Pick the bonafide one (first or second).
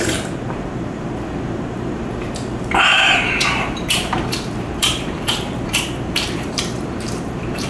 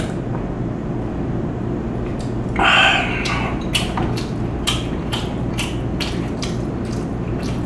second